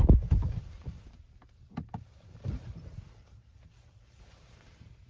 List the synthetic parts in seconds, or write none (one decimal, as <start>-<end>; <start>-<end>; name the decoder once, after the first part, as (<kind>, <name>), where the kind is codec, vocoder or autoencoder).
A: 0.0-5.1 (vocoder, BigVGAN v2)